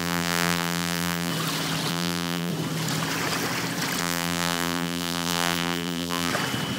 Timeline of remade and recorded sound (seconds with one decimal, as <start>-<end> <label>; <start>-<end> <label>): 0.0-1.3 remade; 1.3-1.9 recorded; 1.9-2.5 remade; 2.5-4.0 recorded; 4.0-6.3 remade; 6.3-6.8 recorded